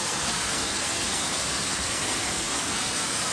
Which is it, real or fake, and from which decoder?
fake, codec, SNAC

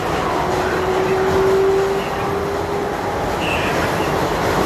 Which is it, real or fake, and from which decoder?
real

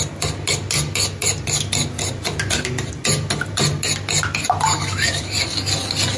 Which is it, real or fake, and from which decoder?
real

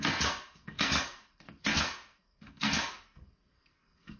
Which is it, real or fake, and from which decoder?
fake, codec, SNAC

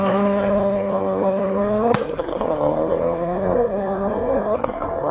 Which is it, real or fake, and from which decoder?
fake, codec, SNAC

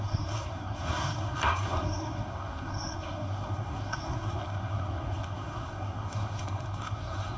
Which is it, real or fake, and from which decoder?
fake, codec, SNAC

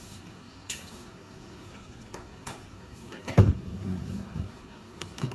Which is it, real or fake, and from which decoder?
fake, codec, SNAC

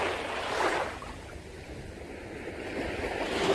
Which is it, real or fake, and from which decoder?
real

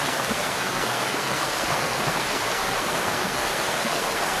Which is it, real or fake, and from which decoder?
fake, codec, SNAC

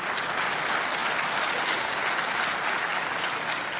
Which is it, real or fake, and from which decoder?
real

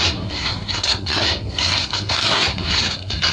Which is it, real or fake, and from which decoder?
fake, codec, SNAC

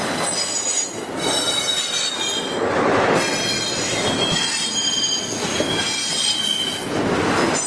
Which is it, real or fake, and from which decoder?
real